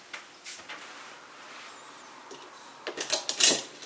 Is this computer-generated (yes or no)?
no